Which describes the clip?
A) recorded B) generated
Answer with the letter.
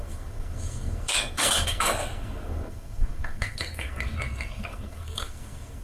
B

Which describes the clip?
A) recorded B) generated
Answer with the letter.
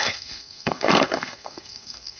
B